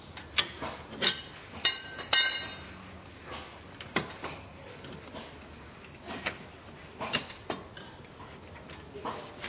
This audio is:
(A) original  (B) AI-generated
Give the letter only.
A